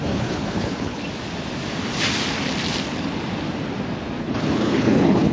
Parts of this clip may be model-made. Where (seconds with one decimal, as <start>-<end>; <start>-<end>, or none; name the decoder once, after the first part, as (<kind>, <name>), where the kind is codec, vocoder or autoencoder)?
0.0-1.0 (codec, HILCodec); 4.2-5.3